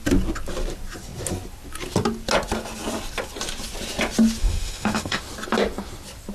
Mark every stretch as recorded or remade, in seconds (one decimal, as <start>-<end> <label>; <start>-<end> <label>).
0.0-4.4 recorded; 4.4-5.2 remade; 5.2-6.3 recorded